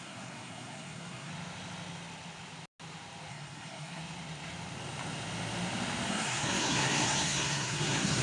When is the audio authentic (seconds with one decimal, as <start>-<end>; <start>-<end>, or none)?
1.3-3.3; 4.0-6.1